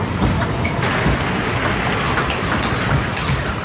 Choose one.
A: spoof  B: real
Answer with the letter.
B